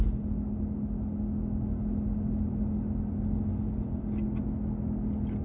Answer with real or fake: real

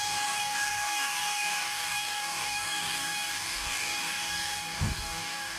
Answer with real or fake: fake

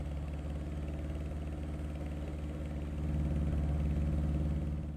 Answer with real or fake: real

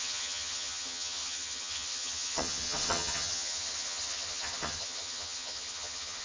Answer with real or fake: fake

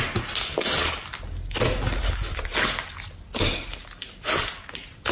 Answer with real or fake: real